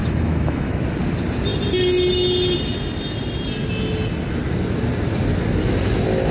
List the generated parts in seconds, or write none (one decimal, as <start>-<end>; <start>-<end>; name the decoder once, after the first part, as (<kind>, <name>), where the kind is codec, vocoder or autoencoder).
0.0-0.8 (autoencoder, DAC-VAE)